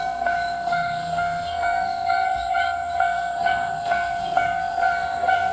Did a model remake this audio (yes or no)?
yes